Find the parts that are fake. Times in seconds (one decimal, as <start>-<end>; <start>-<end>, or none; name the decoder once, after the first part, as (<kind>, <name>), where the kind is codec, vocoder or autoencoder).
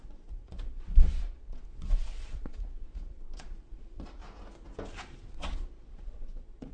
0.0-4.2 (vocoder, Vocos); 5.3-6.7